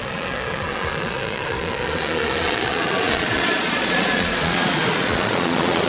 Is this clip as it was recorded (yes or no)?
no